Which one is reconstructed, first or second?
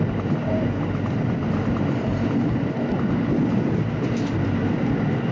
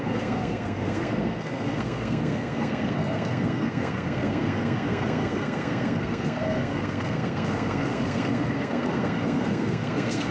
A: second